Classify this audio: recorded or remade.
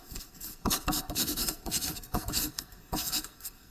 remade